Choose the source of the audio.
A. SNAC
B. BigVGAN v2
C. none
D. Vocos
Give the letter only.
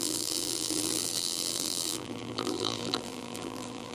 B